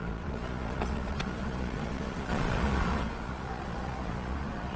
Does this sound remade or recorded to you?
remade